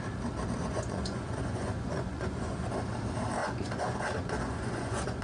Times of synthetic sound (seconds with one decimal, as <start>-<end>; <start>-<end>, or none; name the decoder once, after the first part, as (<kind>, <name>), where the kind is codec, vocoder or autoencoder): 0.6-2.7 (vocoder, Vocos); 3.4-5.2